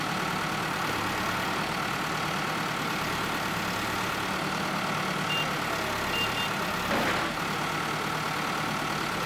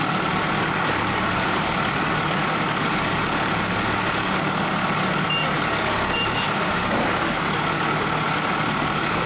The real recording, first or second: first